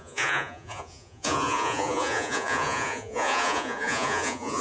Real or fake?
fake